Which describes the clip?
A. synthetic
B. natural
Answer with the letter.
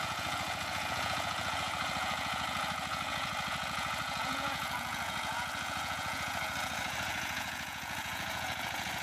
A